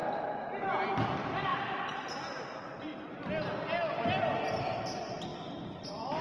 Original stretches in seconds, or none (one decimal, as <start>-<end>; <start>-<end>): 0.0-5.3

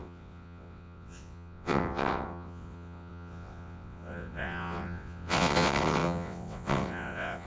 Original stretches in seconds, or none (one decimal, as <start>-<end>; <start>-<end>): none

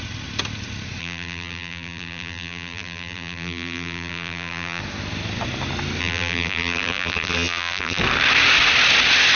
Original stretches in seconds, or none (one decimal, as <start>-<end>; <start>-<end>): 0.0-1.0; 4.8-6.0; 8.0-9.4

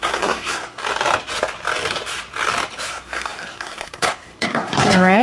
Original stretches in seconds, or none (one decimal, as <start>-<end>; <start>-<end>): 0.8-2.9

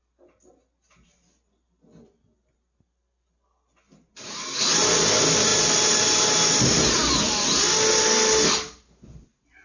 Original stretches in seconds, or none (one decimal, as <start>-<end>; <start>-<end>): 0.0-9.6

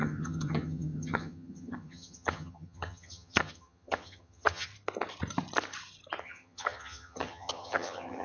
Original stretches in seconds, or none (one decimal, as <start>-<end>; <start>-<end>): 4.7-6.2

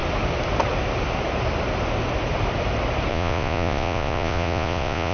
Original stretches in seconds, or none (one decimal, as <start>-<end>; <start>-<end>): 0.0-3.1

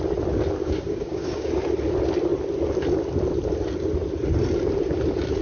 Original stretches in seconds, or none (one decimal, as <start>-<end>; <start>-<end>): 0.0-0.6; 1.5-5.4